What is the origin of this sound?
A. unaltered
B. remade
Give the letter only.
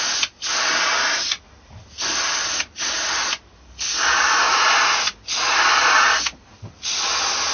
A